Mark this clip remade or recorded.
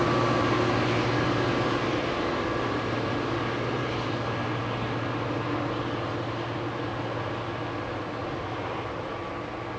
recorded